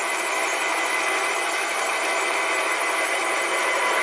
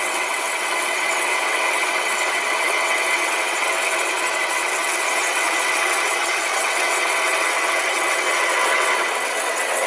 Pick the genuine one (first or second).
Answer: first